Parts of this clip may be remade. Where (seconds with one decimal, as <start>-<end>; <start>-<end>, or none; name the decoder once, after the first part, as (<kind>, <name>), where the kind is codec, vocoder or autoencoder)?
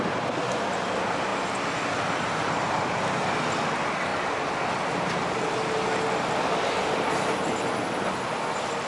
none